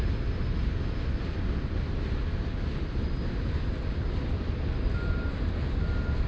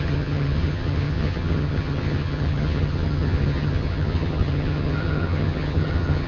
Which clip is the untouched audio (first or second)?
first